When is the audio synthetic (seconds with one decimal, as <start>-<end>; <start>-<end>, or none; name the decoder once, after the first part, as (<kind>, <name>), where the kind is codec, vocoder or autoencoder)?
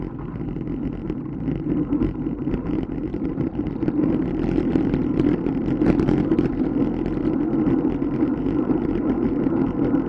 0.0-5.0 (vocoder, BigVGAN v2); 6.3-6.7; 8.2-10.1